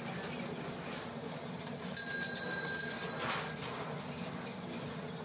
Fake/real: real